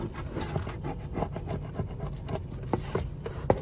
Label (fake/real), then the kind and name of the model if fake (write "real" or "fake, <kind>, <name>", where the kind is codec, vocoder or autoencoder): real